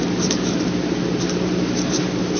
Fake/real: real